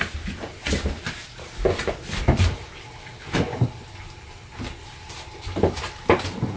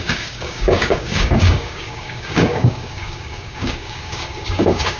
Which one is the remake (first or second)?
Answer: second